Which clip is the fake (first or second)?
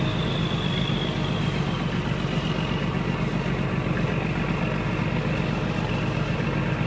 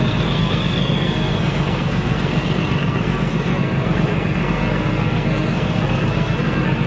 second